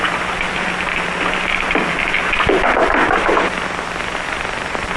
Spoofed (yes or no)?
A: no